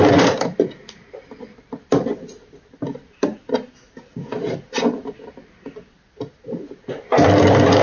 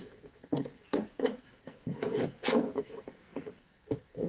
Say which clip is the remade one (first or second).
second